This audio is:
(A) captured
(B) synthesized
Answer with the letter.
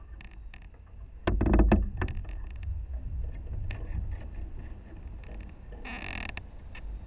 A